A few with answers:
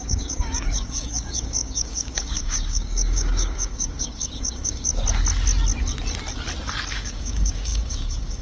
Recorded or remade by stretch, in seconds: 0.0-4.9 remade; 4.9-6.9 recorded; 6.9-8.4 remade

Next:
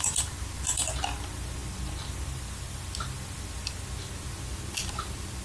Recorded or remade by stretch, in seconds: 0.0-5.4 recorded

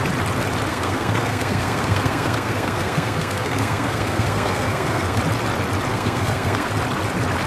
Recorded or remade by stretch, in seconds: 0.0-0.7 recorded; 0.7-5.2 remade; 5.2-5.9 recorded; 5.9-6.7 remade; 6.7-7.5 recorded

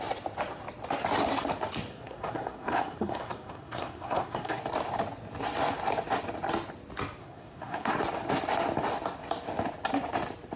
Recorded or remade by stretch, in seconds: 0.0-1.9 recorded; 1.9-4.6 remade; 4.6-7.2 recorded; 7.2-7.9 remade; 7.9-10.6 recorded

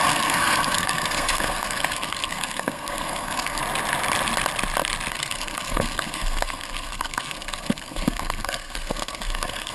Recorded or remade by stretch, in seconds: 0.0-3.6 remade; 3.6-5.1 recorded; 5.1-9.7 remade

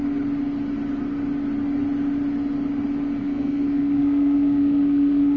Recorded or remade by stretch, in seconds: 0.0-3.2 recorded; 3.2-5.4 remade